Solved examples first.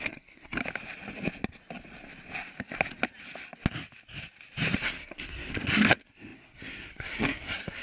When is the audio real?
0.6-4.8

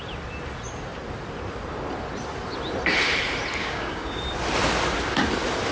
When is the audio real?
0.0-3.6; 4.2-5.7

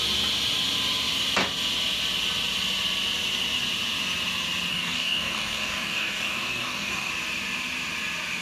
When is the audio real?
0.0-4.7; 7.1-8.4

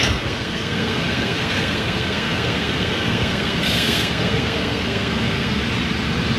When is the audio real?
5.6-6.4

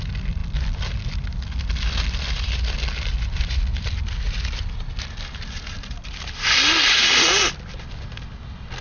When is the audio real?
0.0-8.8

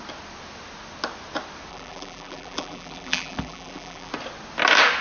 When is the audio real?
0.0-1.7; 4.1-5.0

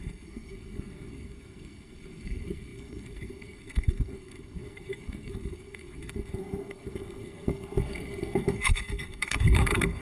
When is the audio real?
none

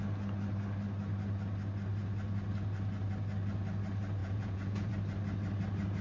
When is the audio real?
0.0-4.2; 4.9-6.0